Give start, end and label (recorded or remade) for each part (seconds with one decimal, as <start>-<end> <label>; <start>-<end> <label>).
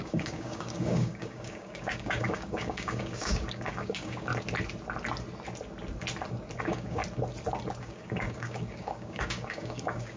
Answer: 0.0-4.3 remade; 4.3-6.6 recorded; 6.6-7.0 remade; 7.0-7.8 recorded; 7.8-10.2 remade